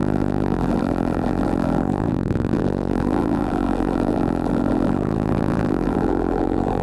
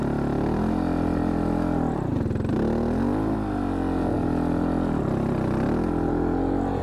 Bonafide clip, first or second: second